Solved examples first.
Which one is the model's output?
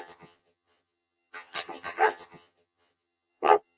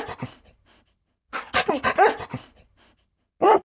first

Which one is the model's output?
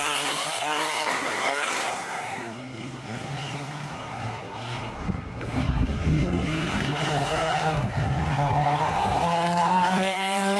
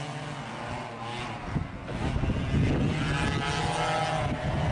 first